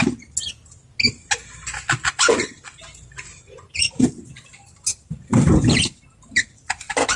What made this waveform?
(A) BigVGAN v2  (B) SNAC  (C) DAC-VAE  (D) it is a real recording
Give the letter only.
D